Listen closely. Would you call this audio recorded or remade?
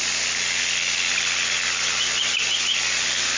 recorded